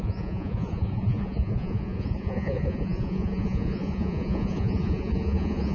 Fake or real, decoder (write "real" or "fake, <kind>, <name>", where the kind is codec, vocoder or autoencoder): fake, vocoder, Vocos